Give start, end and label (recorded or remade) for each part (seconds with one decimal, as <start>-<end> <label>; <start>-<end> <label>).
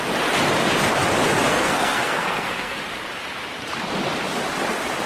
0.0-1.5 recorded; 1.5-2.8 remade; 2.8-5.1 recorded